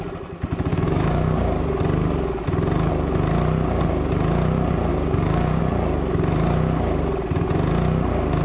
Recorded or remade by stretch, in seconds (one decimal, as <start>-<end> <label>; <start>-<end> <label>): 0.0-0.7 recorded; 0.7-1.7 remade; 1.7-4.9 recorded; 4.9-5.6 remade; 5.6-8.4 recorded